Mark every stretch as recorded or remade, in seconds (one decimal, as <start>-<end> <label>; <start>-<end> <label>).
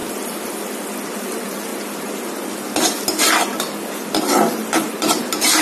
0.0-1.2 recorded; 1.2-1.7 remade; 1.7-4.3 recorded; 4.3-5.6 remade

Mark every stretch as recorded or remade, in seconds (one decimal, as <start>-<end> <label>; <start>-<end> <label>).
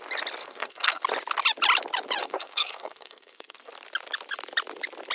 0.0-0.4 recorded; 0.4-1.0 remade; 1.0-2.2 recorded; 2.2-3.7 remade; 3.7-5.1 recorded